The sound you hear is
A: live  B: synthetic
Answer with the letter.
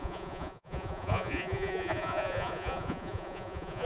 B